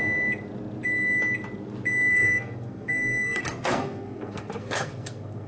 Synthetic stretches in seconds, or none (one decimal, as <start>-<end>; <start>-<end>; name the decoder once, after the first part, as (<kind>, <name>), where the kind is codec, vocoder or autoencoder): 2.1-5.5 (codec, SNAC)